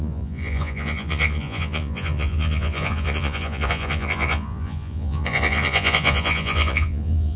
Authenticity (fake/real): fake